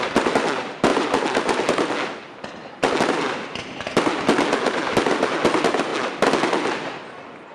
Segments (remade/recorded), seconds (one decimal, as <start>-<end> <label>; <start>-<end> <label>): 0.0-7.5 recorded